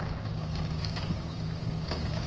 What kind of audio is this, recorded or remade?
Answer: remade